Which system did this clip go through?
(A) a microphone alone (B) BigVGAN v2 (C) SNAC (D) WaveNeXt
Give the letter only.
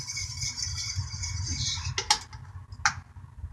A